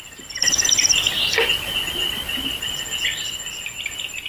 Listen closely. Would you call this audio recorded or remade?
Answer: recorded